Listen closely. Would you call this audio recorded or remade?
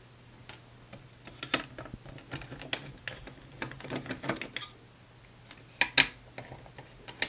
recorded